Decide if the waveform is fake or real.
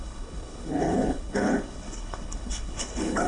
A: fake